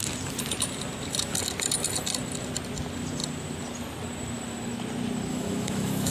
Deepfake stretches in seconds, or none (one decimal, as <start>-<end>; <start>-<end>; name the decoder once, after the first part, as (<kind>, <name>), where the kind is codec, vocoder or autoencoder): 5.3-6.1 (autoencoder, DAC-VAE)